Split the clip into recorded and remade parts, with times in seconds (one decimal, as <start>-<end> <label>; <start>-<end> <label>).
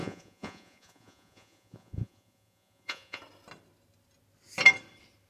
0.0-3.2 remade; 3.2-5.3 recorded